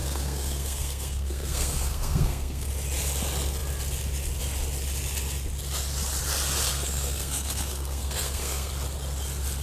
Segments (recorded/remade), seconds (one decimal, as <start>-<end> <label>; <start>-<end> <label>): 0.0-2.7 remade; 2.7-6.7 recorded; 6.7-8.7 remade; 8.7-9.6 recorded